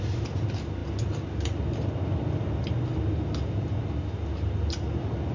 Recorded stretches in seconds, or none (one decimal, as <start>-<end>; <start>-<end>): 0.0-5.3